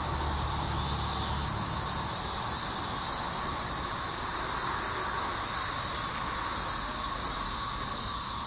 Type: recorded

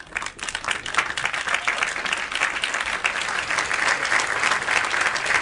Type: recorded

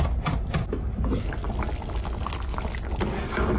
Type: recorded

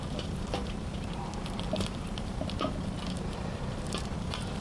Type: remade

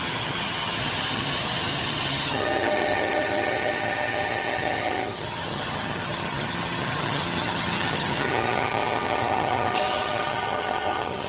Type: remade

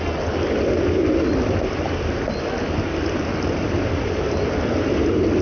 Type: recorded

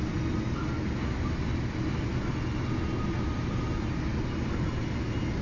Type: recorded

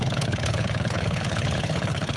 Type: remade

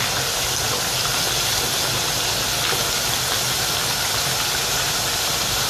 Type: recorded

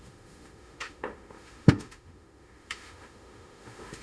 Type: remade